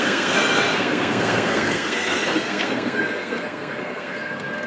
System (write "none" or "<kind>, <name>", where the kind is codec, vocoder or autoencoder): codec, SNAC